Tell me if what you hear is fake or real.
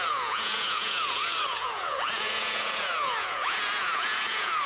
fake